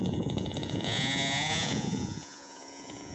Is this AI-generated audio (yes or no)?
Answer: yes